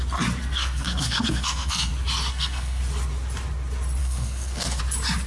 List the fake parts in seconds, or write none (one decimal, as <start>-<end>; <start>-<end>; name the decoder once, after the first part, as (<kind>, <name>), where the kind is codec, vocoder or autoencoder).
0.4-1.9 (codec, SNAC); 2.3-2.8; 4.0-4.8

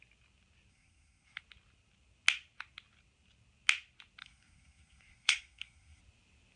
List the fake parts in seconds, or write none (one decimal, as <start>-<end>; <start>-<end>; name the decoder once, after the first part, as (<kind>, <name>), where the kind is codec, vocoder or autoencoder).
0.7-1.4 (codec, SNAC); 4.2-6.0